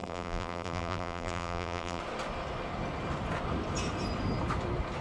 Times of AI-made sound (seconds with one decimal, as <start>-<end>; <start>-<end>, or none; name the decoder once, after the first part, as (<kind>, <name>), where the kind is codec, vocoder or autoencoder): 0.0-2.0 (vocoder, BigVGAN v2)